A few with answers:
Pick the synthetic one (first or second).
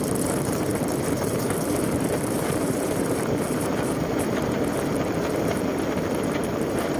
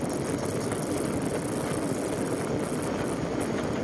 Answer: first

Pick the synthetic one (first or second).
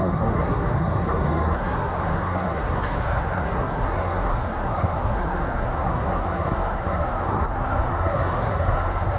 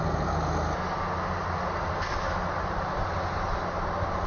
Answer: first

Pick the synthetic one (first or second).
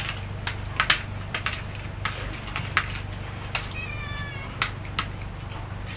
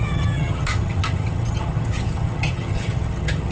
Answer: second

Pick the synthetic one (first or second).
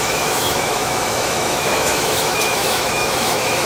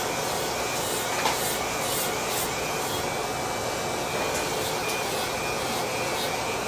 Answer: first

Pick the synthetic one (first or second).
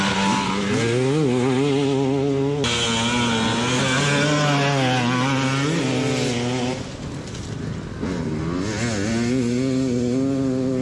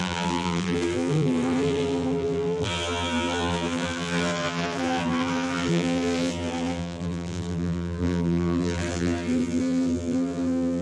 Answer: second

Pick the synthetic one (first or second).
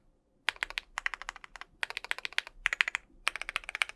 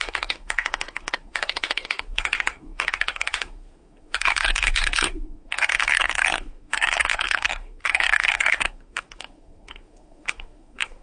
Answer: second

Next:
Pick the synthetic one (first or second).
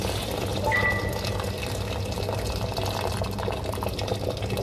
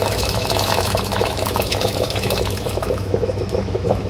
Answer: second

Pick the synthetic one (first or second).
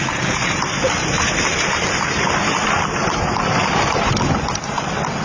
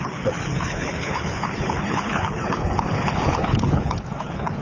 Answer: second